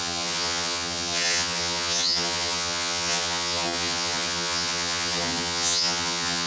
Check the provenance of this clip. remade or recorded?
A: remade